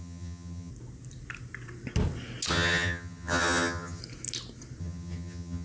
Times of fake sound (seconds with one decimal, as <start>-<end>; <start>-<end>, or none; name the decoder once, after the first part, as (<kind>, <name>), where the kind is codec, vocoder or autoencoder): 0.0-0.7 (vocoder, HiFi-GAN); 2.5-4.0; 4.8-5.6

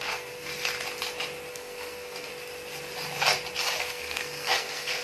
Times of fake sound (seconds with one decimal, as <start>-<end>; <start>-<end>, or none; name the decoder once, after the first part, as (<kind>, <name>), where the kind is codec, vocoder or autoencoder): 0.0-0.5 (codec, SNAC); 1.5-2.3; 3.8-5.0